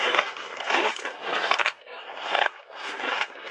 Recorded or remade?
remade